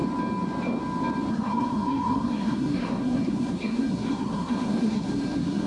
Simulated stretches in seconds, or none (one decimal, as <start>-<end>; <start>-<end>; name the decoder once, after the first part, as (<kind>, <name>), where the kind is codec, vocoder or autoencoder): 1.3-5.7 (codec, SNAC)